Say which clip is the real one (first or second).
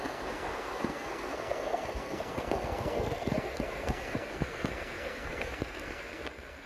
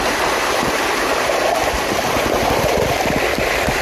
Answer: second